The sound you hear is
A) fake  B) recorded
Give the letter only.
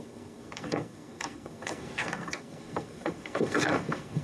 A